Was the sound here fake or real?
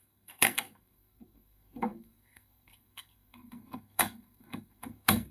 fake